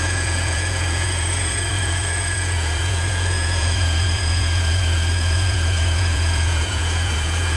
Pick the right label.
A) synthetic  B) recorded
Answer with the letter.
A